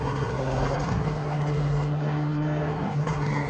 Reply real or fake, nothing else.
fake